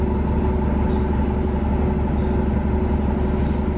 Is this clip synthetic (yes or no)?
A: no